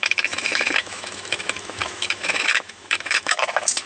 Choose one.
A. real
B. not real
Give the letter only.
B